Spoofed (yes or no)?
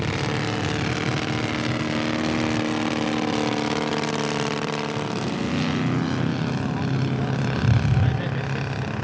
no